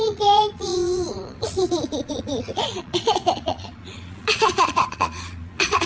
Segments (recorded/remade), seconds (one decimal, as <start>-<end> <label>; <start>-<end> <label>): 0.0-5.9 remade

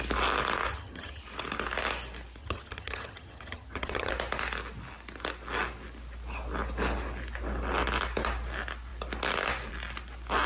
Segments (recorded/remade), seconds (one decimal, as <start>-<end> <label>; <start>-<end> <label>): 0.0-0.7 recorded; 0.7-1.2 remade; 1.2-2.4 recorded; 2.4-4.1 remade; 4.1-10.5 recorded

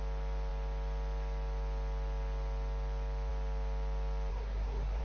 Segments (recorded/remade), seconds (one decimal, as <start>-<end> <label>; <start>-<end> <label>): 0.0-4.3 recorded; 4.3-5.0 remade

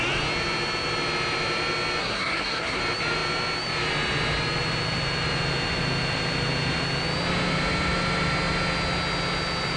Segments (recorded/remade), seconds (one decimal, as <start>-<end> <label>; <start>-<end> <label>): 0.0-2.0 recorded; 2.0-2.8 remade; 2.8-9.8 recorded

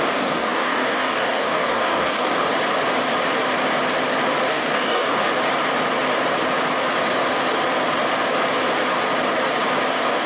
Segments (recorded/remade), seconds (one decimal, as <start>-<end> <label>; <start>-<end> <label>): 0.0-2.5 remade; 2.5-4.5 recorded; 4.5-5.3 remade; 5.3-9.9 recorded; 9.9-10.3 remade

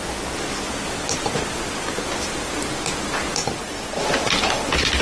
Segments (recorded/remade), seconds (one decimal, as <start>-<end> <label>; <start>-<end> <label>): 0.0-5.0 recorded

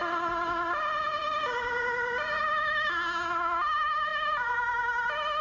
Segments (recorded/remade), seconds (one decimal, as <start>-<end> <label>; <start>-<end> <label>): 0.0-5.4 recorded